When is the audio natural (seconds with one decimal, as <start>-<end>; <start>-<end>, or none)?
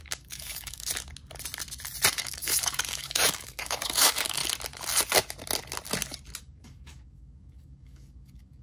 0.9-2.1; 4.4-6.4